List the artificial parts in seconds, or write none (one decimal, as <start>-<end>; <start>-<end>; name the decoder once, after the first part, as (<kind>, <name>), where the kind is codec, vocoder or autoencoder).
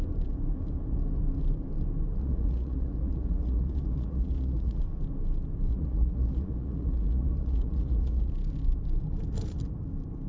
2.2-4.8 (vocoder, Vocos); 5.7-8.3